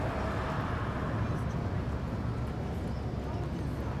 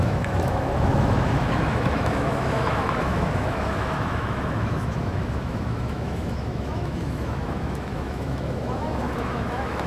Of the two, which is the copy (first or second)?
second